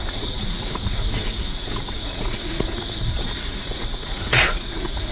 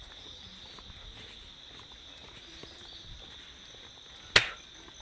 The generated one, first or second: first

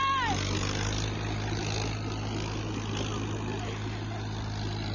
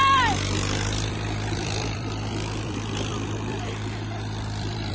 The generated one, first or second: second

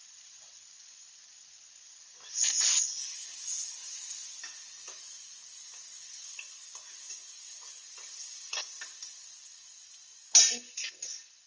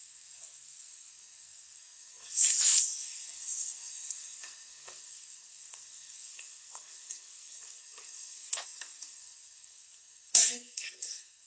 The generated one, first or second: second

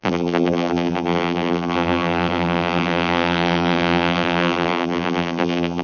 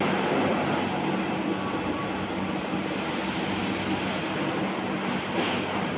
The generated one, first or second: first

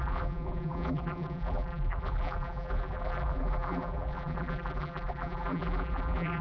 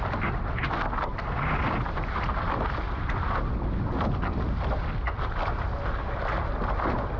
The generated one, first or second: first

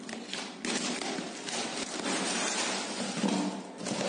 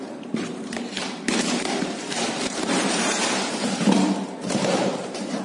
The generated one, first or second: second